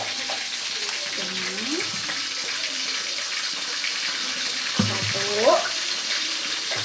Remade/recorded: recorded